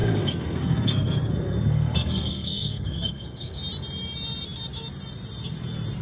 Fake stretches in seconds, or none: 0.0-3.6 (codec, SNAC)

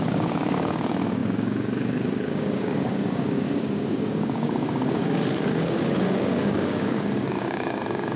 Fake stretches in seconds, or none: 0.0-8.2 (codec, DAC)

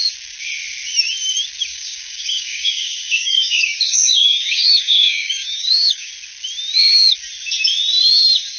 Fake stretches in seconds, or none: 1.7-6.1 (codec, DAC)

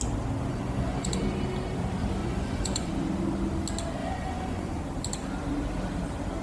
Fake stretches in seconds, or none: 0.5-1.2 (vocoder, Vocos); 2.2-2.9; 4.0-4.8